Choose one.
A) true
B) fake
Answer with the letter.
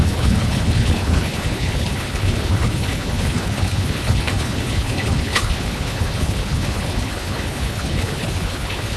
B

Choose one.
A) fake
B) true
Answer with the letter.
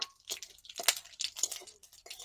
B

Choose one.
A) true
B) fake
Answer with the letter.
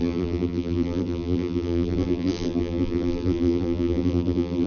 B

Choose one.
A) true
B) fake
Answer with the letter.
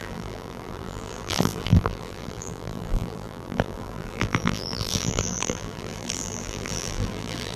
B